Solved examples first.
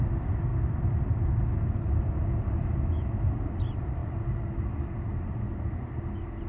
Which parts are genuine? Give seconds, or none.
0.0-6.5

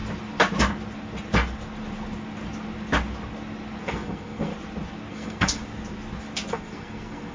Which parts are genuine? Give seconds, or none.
0.0-3.8; 4.5-5.1; 5.6-6.5